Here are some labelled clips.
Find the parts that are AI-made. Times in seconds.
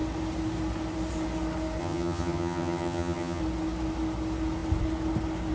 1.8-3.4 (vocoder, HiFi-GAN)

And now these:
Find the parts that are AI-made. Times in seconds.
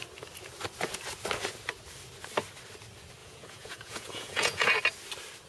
3.2-4.7 (vocoder, Vocos)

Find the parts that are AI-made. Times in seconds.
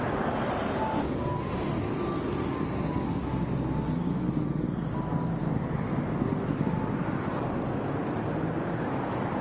none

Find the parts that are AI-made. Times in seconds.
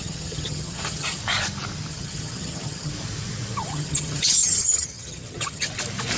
0.0-1.2 (vocoder, HiFi-GAN); 1.9-2.9; 3.6-5.7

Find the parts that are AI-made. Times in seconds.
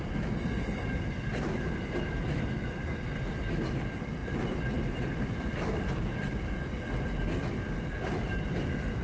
4.2-6.6 (vocoder, BigVGAN v2)